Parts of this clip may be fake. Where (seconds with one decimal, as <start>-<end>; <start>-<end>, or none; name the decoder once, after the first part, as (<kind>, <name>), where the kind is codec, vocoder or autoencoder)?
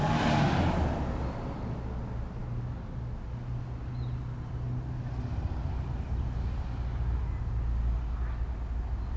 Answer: none